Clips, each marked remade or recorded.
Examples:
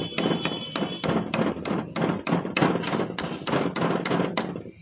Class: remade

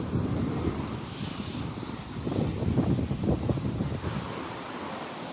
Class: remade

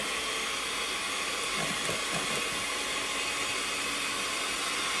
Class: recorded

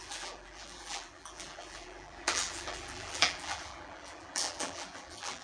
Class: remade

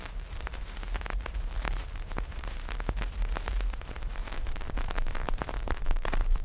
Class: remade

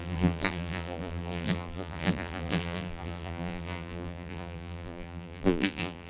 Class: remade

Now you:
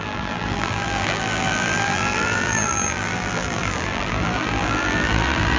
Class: remade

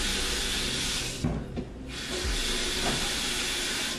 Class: recorded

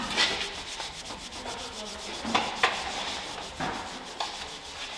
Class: recorded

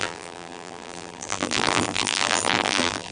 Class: remade